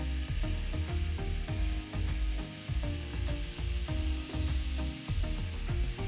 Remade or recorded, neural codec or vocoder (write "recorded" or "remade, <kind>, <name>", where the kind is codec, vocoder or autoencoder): recorded